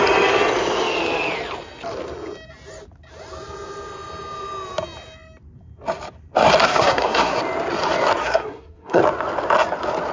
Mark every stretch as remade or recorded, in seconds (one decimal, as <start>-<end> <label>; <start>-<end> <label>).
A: 0.0-6.6 recorded; 6.6-7.4 remade; 7.4-8.2 recorded; 8.2-9.0 remade; 9.0-10.1 recorded